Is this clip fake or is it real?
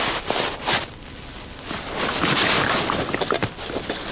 real